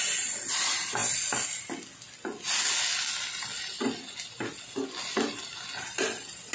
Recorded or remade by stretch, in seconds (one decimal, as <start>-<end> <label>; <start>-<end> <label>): 0.0-6.5 recorded